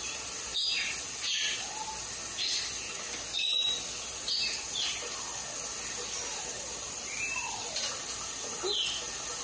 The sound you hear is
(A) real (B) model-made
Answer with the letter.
A